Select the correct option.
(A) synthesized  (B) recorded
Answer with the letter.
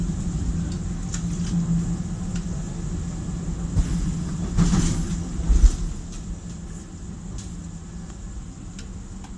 B